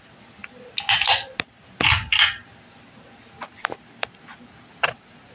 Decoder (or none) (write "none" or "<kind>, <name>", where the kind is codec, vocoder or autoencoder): none